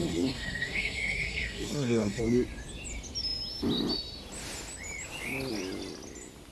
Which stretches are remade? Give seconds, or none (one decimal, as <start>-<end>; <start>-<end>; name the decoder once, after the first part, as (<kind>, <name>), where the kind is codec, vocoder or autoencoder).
0.0-2.2 (codec, SNAC)

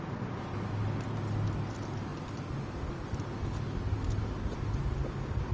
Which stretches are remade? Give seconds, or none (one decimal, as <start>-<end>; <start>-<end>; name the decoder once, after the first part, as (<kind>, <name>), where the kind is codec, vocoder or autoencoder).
none

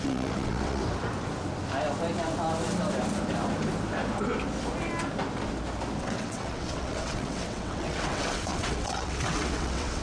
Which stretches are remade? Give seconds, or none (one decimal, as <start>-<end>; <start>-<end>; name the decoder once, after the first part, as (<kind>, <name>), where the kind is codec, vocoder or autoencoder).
0.0-0.8 (vocoder, WaveNeXt); 6.0-10.0

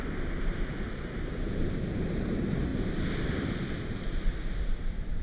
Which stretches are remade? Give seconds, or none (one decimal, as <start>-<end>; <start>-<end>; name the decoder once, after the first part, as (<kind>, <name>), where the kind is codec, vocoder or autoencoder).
none

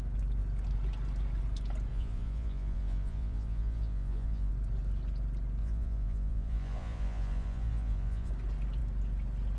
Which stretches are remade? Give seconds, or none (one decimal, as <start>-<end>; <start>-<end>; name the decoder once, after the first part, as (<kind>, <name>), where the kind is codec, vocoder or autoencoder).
1.9-4.5 (vocoder, Vocos); 5.6-8.3

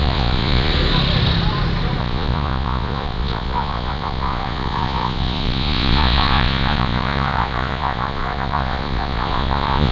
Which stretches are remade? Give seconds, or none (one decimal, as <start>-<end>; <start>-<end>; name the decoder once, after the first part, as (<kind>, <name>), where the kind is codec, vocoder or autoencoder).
0.0-0.7 (vocoder, Vocos); 2.0-9.9